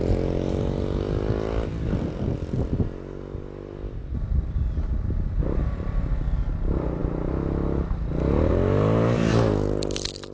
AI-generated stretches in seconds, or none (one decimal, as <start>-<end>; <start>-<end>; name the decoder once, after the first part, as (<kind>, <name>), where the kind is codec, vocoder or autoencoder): none